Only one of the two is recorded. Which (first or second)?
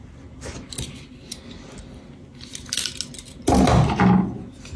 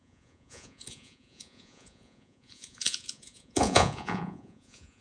first